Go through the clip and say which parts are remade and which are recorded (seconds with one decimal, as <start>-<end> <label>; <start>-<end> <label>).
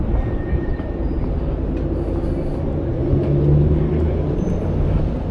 0.0-5.3 recorded